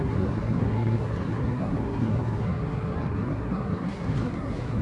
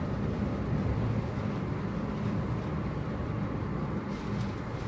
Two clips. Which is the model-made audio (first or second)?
first